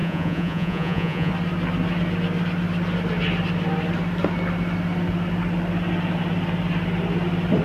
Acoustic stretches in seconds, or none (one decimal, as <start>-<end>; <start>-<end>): 1.3-7.6